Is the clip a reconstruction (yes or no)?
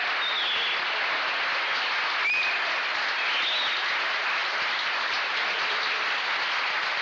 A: no